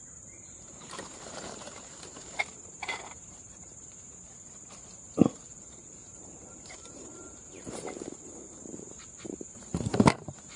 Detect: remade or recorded remade